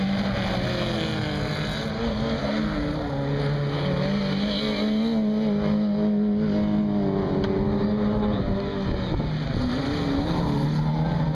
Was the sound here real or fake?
real